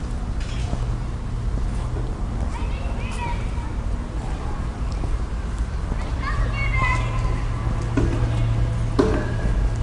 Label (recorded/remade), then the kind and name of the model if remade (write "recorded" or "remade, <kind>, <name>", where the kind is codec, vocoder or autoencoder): recorded